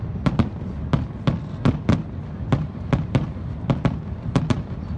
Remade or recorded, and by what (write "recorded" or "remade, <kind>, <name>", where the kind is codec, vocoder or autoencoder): recorded